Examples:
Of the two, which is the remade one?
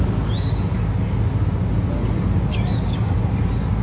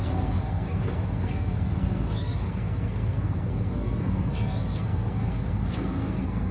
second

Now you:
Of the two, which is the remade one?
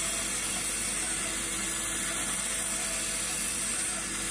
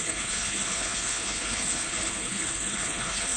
second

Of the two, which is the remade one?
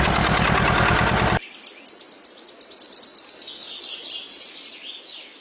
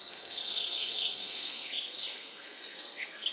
second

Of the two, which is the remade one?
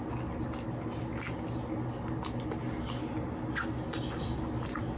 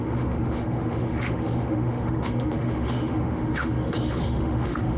second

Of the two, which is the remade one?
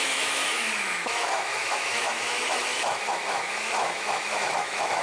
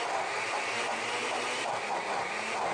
first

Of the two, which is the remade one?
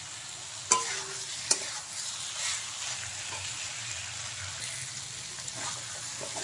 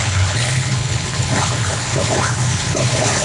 second